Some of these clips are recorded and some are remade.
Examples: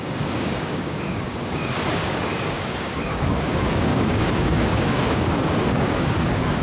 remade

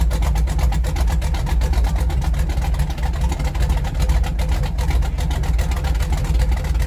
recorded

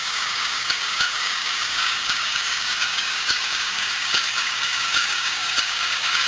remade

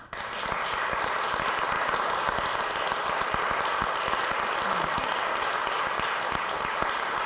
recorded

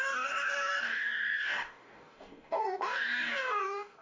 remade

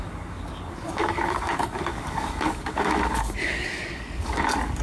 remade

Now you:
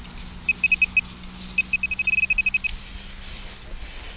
recorded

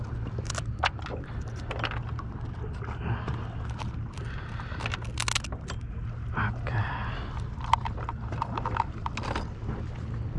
recorded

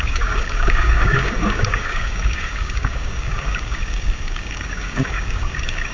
remade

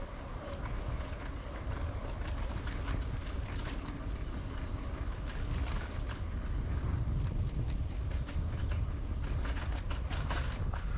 recorded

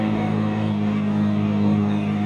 remade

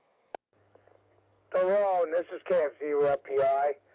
remade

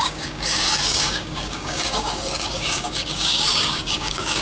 remade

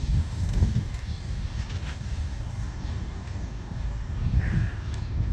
remade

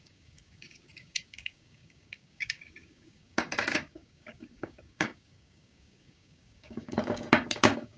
remade